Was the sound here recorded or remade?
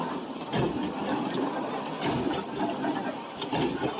recorded